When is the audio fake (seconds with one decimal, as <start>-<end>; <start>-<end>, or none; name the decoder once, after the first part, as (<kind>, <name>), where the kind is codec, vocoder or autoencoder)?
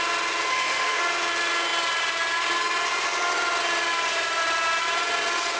0.5-1.0 (autoencoder, DAC-VAE)